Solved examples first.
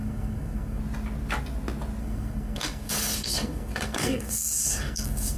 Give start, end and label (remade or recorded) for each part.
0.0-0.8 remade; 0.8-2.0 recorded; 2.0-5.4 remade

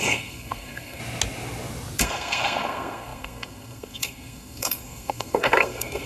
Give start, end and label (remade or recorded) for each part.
0.0-1.0 remade; 1.0-2.0 recorded; 2.0-6.1 remade

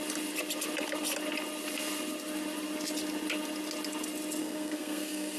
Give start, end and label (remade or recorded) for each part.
0.0-4.4 recorded; 4.4-5.4 remade

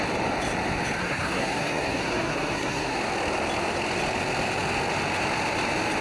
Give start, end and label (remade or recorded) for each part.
0.0-1.0 recorded; 1.0-3.0 remade; 3.0-6.0 recorded

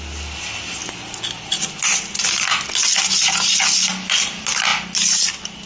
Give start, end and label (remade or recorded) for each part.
0.0-5.7 recorded

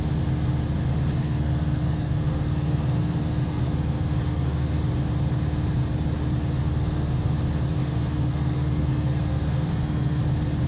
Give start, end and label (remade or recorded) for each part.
0.0-1.1 recorded; 1.1-4.8 remade; 4.8-6.6 recorded; 6.6-7.3 remade; 7.3-7.8 recorded; 7.8-10.2 remade; 10.2-10.7 recorded

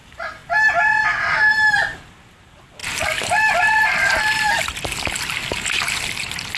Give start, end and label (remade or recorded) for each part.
0.0-6.6 recorded